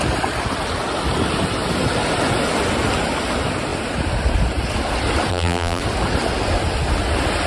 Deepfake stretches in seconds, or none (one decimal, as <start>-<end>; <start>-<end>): 5.3-5.8